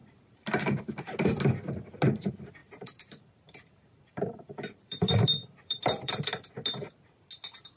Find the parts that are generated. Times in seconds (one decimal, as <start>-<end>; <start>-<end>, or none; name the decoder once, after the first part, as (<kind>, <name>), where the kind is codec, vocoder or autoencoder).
0.0-0.8 (vocoder, BigVGAN v2); 2.6-6.5